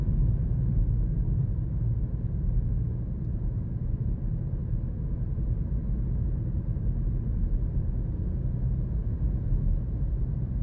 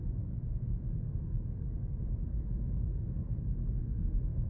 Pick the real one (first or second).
first